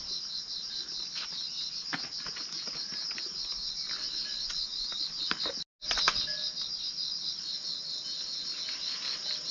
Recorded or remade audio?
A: recorded